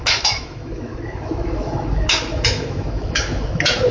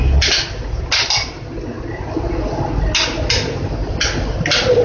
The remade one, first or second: first